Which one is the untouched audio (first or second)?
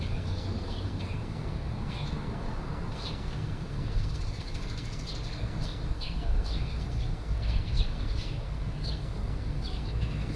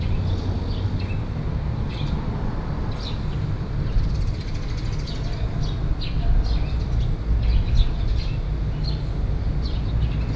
second